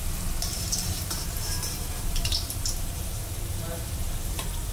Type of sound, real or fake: fake